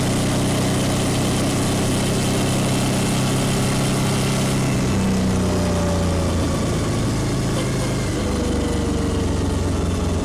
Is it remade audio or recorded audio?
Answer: recorded